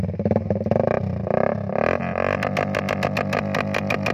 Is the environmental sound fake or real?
real